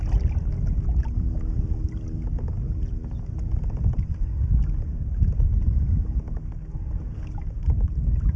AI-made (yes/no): no